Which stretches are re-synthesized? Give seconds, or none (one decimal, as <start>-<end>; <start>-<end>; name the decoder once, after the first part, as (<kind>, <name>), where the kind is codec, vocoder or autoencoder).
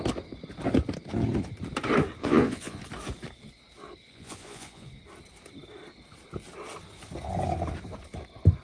2.2-2.8 (vocoder, Vocos); 4.1-4.9